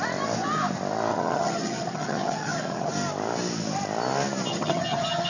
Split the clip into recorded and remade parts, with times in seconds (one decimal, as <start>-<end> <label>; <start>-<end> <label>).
0.0-1.1 recorded; 1.1-2.9 remade; 2.9-4.5 recorded; 4.5-5.3 remade